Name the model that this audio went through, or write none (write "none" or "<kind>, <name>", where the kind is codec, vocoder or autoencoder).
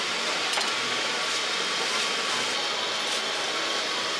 none